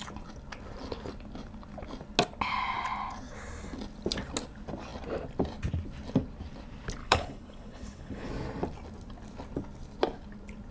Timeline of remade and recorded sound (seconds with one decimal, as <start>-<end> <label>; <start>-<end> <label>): 0.0-7.0 recorded; 7.0-8.3 remade; 8.3-10.7 recorded